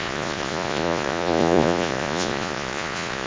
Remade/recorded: remade